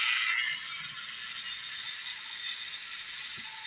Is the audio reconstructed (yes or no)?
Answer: no